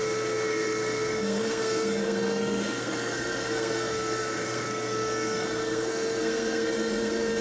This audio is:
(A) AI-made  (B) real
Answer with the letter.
A